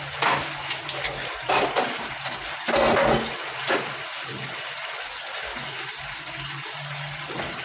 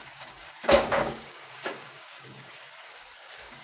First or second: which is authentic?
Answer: first